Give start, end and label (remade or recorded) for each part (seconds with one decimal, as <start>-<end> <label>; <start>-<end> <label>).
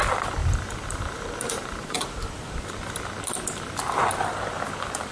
0.0-0.4 recorded; 0.4-2.0 remade; 2.0-5.1 recorded